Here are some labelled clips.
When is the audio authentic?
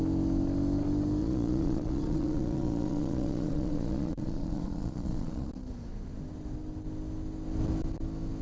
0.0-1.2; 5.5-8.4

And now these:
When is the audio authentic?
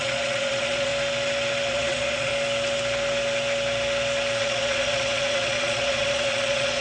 0.9-1.7; 2.3-4.4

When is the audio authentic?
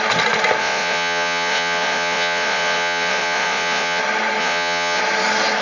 0.0-0.6; 4.0-4.4; 5.0-5.6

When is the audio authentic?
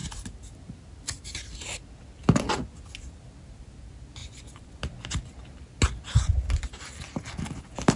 0.0-4.2; 4.8-8.0